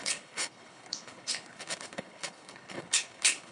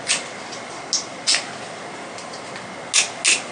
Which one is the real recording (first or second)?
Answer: second